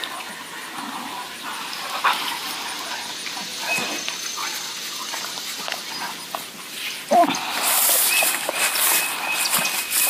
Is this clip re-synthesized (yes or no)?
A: no